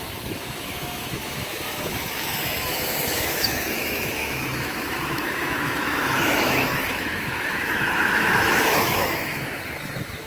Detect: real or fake fake